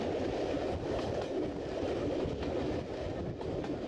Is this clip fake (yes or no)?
no